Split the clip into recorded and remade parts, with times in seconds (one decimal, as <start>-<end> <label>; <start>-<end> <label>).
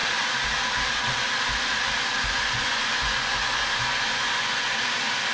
0.0-2.1 recorded; 2.1-4.8 remade; 4.8-5.3 recorded